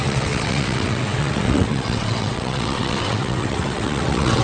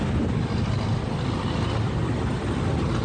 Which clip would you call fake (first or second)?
first